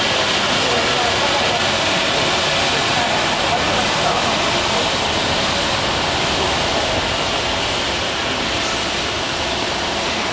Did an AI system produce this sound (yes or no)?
no